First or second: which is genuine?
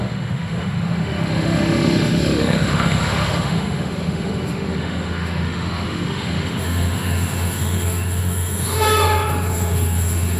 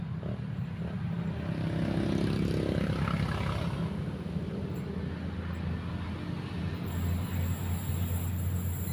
second